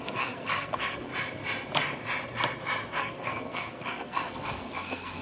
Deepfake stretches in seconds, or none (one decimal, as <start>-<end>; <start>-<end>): 0.0-1.1; 2.9-5.2